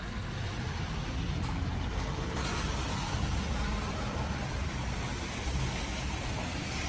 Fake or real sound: real